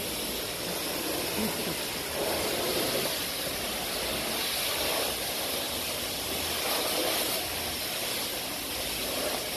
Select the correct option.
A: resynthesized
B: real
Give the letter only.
B